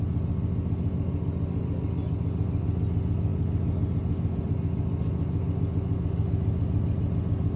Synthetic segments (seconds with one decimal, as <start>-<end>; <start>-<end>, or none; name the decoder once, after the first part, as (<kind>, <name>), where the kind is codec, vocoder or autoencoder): none